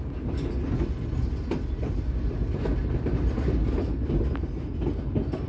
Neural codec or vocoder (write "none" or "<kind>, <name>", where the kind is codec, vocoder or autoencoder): none